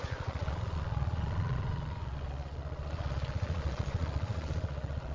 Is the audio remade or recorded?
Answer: remade